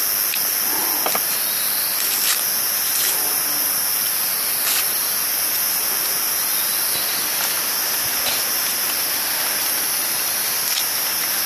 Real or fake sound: real